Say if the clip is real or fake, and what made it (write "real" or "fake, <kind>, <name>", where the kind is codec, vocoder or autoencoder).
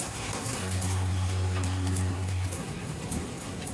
fake, codec, SNAC